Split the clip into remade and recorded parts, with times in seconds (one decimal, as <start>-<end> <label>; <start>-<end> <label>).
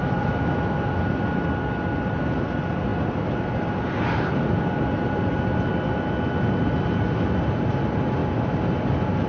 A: 0.0-9.3 recorded